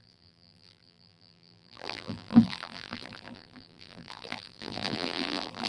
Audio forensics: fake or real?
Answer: fake